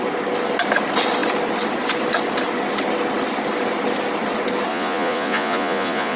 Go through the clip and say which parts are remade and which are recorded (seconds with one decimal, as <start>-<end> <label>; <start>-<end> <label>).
0.0-4.7 recorded; 4.7-6.2 remade

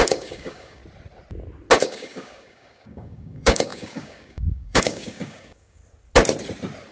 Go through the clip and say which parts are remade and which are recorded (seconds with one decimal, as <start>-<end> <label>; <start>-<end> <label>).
0.0-0.8 remade; 0.8-1.8 recorded; 1.8-5.8 remade; 5.8-6.9 recorded

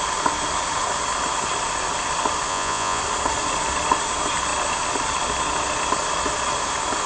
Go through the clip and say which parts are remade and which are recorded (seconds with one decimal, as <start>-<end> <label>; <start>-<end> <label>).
0.0-2.5 recorded; 2.5-3.0 remade; 3.0-7.1 recorded

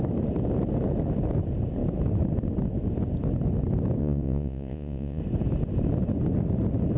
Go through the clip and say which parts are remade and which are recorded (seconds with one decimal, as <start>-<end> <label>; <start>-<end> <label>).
0.0-4.0 recorded; 4.0-5.2 remade; 5.2-7.0 recorded

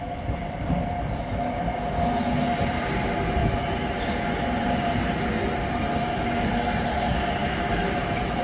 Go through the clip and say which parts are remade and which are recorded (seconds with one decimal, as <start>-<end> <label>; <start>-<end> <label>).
0.0-3.4 recorded; 3.4-4.0 remade; 4.0-7.4 recorded; 7.4-8.4 remade